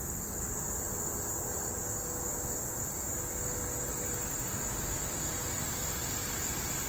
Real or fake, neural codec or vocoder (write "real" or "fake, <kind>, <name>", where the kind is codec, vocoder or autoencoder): real